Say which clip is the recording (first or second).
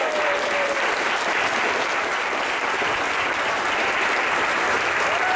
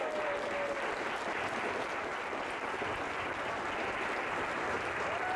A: second